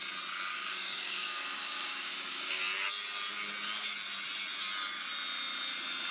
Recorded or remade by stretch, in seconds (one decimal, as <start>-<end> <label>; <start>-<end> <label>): 0.0-0.5 recorded; 0.5-2.6 remade; 2.6-6.1 recorded